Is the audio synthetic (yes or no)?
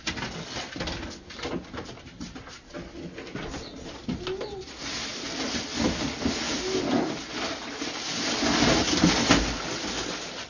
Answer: no